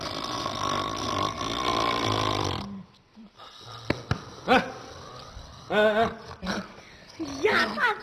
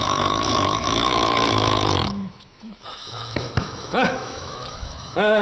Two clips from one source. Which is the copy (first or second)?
second